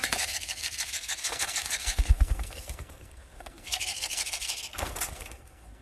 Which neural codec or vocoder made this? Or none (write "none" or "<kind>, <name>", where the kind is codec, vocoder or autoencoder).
codec, SNAC